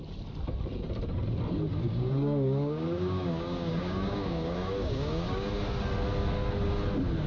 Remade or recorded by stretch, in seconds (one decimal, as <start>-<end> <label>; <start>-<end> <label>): 0.0-1.7 recorded; 1.7-5.5 remade; 5.5-7.3 recorded